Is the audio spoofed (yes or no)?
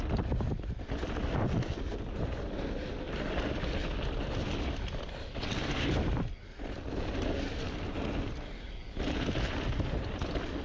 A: no